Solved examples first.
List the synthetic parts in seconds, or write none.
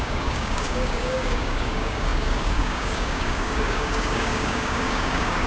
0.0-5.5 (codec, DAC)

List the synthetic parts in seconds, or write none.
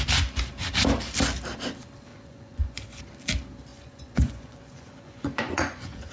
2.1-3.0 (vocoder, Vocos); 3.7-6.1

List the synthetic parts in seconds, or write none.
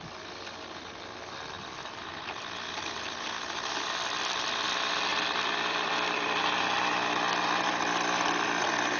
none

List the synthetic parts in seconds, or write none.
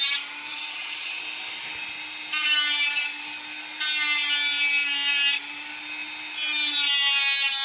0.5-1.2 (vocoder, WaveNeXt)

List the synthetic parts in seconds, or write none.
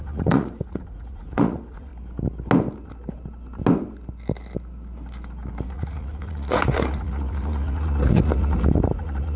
0.0-1.9 (vocoder, Vocos); 5.7-9.4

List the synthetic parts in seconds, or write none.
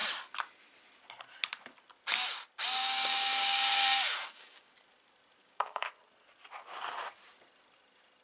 2.8-4.7 (codec, DAC); 5.4-5.9